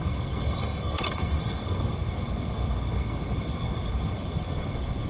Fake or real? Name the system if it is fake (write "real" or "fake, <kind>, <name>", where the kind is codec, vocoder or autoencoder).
fake, codec, SNAC